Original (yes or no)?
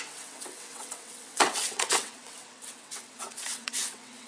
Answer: no